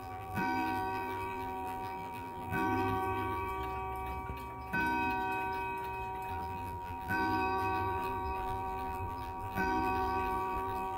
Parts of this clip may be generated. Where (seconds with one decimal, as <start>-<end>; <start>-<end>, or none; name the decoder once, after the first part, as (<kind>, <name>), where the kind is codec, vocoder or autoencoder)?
0.0-3.5 (vocoder, BigVGAN v2); 6.3-11.0